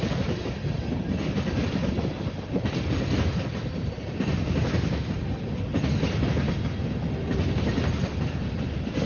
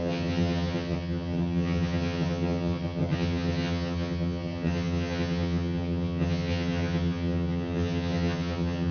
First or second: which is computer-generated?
second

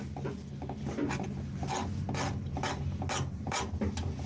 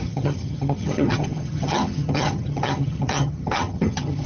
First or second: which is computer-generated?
second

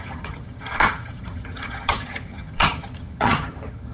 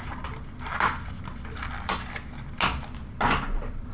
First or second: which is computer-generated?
first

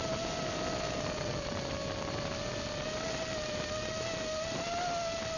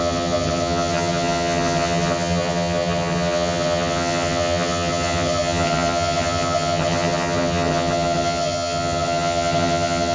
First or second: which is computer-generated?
second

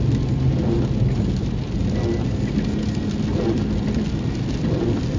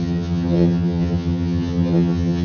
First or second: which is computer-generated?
second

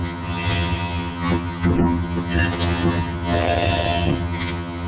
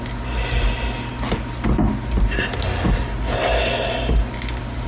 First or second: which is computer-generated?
first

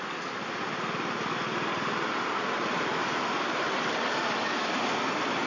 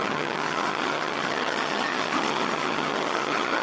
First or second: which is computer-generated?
second